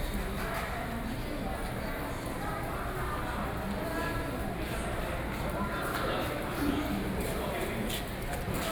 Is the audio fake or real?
real